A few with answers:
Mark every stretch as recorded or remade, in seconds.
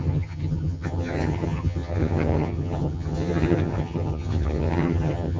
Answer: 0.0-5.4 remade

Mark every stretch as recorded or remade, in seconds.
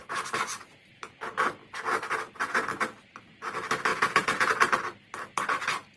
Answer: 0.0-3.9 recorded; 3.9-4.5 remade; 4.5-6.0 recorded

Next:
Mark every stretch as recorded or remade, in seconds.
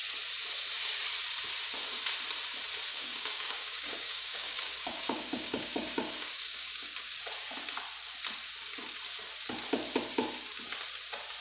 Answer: 0.0-2.9 recorded; 2.9-7.2 remade; 7.2-11.4 recorded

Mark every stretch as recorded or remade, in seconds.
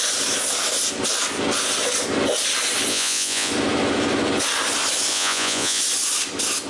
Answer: 0.0-2.9 recorded; 2.9-3.5 remade; 3.5-5.1 recorded; 5.1-5.8 remade; 5.8-6.7 recorded